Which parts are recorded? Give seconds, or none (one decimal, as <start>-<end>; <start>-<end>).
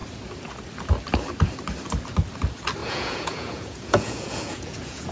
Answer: 0.0-2.8